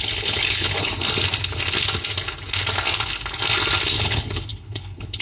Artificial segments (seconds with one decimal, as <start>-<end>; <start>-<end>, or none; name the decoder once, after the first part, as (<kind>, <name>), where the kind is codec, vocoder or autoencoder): 0.0-0.9 (codec, HILCodec); 4.0-5.2